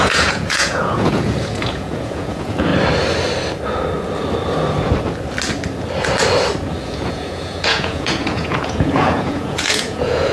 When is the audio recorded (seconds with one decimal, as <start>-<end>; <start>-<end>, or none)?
2.7-6.8